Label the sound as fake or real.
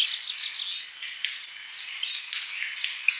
real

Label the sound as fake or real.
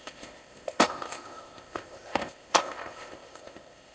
fake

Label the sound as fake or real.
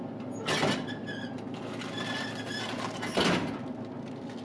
real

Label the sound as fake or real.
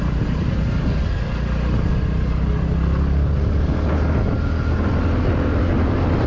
real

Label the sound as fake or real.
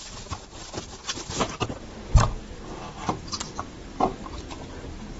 real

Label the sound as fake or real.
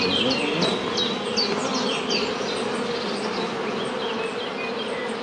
real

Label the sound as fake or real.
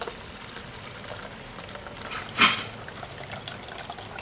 real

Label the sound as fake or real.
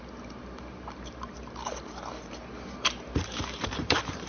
fake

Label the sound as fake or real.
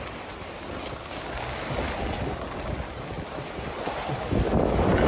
real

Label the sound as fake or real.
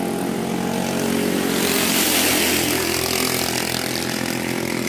real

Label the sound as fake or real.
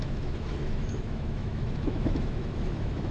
fake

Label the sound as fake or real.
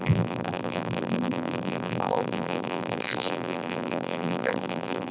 fake